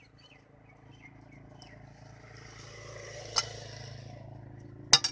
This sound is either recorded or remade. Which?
recorded